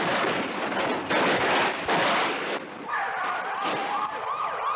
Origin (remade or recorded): recorded